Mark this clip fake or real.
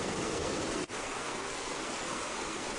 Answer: fake